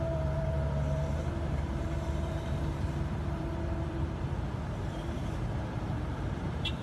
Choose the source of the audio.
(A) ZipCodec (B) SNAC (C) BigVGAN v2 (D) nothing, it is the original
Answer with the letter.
C